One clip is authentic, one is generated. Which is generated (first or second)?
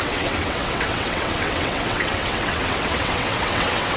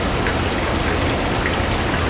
first